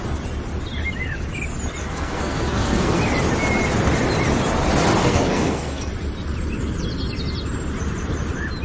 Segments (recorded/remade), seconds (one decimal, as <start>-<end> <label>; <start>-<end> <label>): 0.0-1.8 recorded; 1.8-3.0 remade; 3.0-5.0 recorded; 5.0-5.9 remade; 5.9-8.6 recorded